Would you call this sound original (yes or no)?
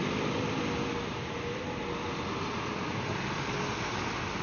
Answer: yes